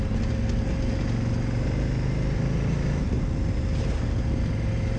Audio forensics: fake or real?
real